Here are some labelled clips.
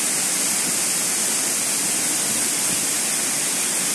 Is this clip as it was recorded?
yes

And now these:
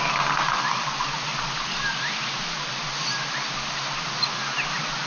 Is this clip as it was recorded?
yes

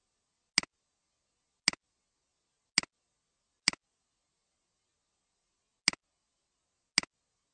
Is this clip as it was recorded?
yes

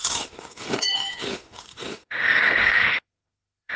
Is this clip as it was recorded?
no